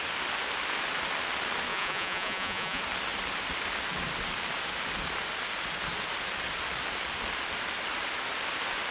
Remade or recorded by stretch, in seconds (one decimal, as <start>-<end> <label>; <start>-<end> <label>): 0.0-1.7 recorded; 1.7-2.8 remade; 2.8-8.9 recorded